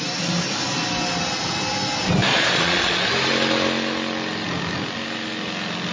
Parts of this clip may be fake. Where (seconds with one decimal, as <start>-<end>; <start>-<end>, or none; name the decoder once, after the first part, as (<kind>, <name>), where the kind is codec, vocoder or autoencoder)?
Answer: 2.3-3.1 (vocoder, Vocos)